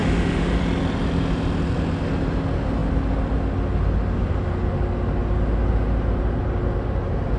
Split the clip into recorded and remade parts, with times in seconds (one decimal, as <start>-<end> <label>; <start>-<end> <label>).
0.0-0.6 remade; 0.6-7.4 recorded